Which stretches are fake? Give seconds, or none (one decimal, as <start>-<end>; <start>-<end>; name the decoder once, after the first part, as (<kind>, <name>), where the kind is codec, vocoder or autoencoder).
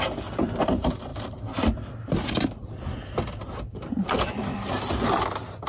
none